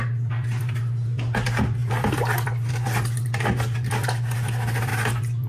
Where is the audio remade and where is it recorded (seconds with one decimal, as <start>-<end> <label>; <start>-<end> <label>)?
0.0-5.5 recorded